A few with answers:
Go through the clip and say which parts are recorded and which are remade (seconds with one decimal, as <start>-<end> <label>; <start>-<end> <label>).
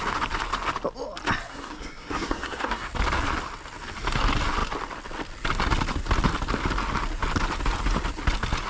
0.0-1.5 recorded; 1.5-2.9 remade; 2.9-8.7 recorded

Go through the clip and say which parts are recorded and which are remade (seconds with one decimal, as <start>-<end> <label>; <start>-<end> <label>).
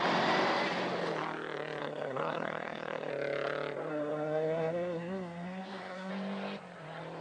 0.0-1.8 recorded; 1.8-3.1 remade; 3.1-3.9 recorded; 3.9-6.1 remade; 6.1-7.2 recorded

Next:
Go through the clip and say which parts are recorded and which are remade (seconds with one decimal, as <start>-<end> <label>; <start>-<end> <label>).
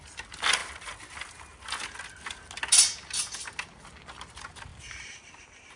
0.0-5.8 recorded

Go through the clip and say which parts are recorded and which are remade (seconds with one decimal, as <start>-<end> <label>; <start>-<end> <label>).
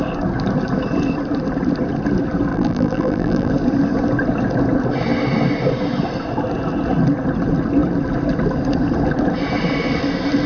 0.0-2.5 recorded; 2.5-3.5 remade; 3.5-10.5 recorded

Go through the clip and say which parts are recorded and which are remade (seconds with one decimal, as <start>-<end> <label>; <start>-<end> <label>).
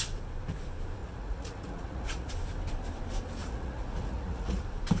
0.0-1.0 recorded; 1.0-2.3 remade; 2.3-3.4 recorded; 3.4-4.6 remade; 4.6-5.0 recorded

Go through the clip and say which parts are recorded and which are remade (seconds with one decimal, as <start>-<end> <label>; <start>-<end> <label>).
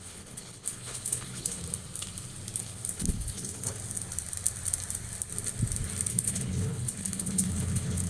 0.0-1.6 remade; 1.6-2.6 recorded; 2.6-3.8 remade; 3.8-6.1 recorded; 6.1-8.1 remade